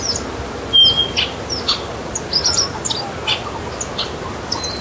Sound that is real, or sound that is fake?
real